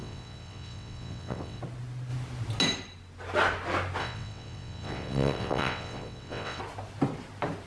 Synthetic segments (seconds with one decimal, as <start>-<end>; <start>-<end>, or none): 0.0-1.6; 4.0-6.6